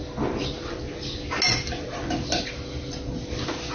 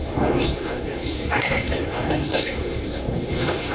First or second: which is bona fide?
first